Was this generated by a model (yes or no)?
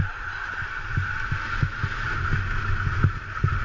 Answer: no